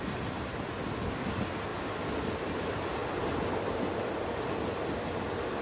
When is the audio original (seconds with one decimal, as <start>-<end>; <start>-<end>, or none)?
0.0-1.7; 2.5-3.0; 4.8-5.6